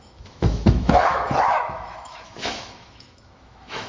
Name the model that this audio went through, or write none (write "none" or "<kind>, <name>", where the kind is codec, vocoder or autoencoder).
autoencoder, DAC-VAE